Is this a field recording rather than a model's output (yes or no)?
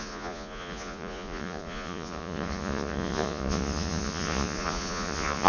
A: no